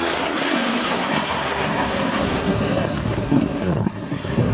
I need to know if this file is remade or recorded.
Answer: remade